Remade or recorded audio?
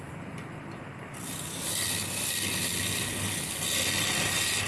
recorded